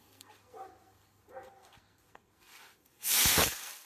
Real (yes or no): no